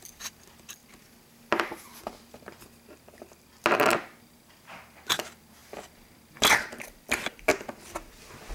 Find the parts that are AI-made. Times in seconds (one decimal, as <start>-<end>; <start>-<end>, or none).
0.0-0.8; 4.2-7.5; 8.1-8.5